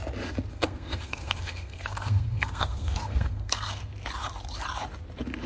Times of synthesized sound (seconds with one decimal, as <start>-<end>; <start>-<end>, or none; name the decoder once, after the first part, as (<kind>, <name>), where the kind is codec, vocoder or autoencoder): 0.5-3.8 (codec, SNAC)